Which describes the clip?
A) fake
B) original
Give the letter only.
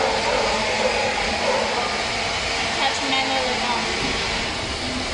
B